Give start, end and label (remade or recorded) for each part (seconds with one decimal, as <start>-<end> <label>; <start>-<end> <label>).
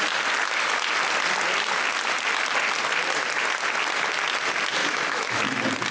0.0-4.8 recorded; 4.8-5.4 remade; 5.4-5.9 recorded